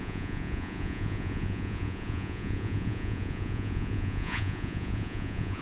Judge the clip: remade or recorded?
remade